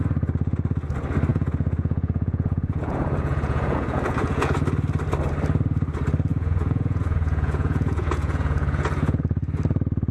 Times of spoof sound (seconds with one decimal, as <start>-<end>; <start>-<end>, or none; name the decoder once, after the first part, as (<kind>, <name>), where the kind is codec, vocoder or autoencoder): 1.3-4.6 (vocoder, Vocos); 6.3-9.2

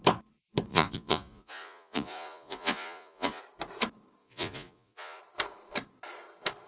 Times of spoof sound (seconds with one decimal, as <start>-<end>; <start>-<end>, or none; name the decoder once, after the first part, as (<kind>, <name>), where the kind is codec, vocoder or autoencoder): 0.7-3.4 (vocoder, Vocos); 4.2-5.2

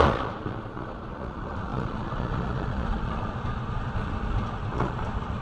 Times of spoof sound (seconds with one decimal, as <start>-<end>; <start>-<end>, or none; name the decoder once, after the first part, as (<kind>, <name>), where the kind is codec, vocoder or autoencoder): 0.0-5.4 (vocoder, Vocos)

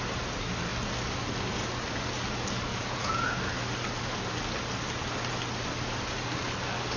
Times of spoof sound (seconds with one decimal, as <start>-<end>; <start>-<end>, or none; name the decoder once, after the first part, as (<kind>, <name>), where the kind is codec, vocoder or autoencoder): 2.7-3.4 (vocoder, Vocos)